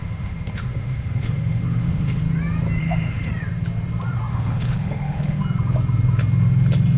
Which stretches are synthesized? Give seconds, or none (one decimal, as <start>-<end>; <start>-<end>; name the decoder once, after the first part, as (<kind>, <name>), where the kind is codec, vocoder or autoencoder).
0.0-2.2 (autoencoder, DAC-VAE); 2.8-3.3; 4.3-5.4